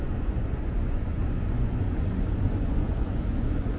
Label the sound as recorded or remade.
remade